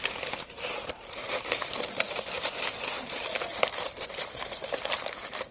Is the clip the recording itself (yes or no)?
no